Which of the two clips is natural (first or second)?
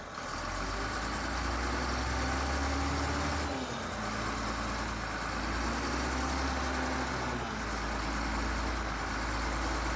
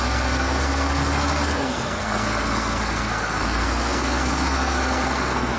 first